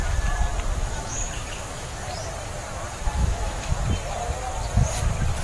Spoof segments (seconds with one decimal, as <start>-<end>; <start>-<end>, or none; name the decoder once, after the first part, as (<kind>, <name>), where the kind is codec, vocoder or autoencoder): 0.8-2.1 (autoencoder, DAC-VAE); 3.2-3.7